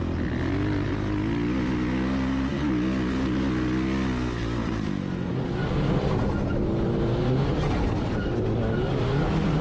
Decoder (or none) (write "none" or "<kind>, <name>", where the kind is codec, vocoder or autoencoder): none